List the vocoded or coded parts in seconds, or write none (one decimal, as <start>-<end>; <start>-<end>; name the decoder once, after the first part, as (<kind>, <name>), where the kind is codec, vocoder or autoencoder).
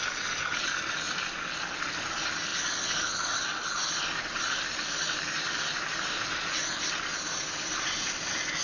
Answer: 4.7-6.6 (vocoder, BigVGAN v2)